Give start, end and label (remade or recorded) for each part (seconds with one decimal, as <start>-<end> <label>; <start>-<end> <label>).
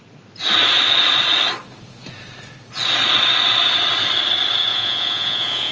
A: 0.0-4.7 recorded; 4.7-5.7 remade